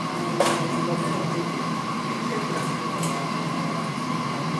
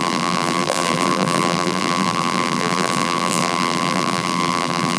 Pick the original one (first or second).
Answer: first